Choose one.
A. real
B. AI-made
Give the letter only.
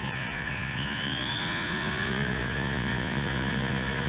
B